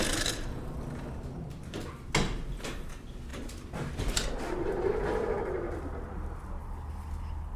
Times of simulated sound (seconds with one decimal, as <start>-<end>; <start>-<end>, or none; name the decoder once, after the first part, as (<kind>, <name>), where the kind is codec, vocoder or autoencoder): none